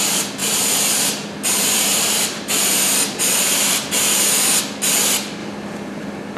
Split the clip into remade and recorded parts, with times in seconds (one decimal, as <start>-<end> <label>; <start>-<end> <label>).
0.0-0.4 recorded; 0.4-4.2 remade; 4.2-6.4 recorded